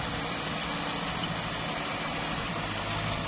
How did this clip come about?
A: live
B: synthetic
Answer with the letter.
A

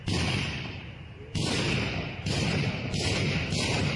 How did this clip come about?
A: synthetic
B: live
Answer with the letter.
B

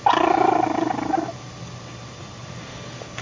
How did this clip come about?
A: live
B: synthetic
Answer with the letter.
A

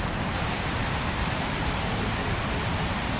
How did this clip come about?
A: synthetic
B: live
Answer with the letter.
A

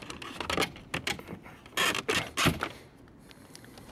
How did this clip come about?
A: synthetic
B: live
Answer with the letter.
B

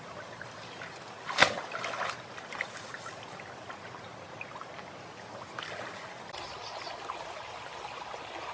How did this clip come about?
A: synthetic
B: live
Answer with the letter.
B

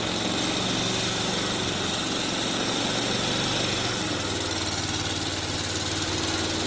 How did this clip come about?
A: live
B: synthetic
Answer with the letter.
A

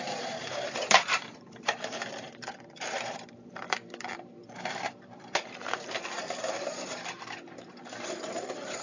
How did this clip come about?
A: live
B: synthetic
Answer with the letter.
B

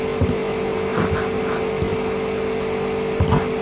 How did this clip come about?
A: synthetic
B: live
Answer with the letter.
B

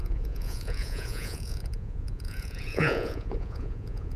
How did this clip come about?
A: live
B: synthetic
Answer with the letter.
B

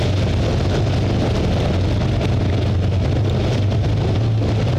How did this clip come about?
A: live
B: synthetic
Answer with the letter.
A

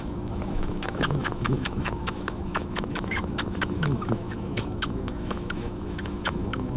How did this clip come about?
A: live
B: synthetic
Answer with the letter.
B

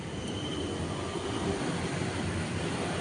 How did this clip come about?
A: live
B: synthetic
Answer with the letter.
A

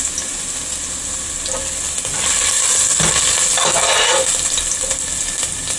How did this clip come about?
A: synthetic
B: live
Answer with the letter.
B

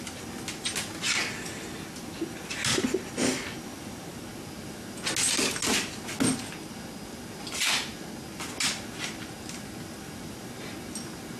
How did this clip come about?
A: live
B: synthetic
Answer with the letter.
A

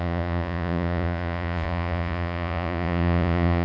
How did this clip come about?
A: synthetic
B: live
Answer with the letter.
A